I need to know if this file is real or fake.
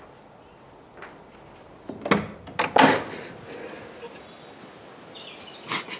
real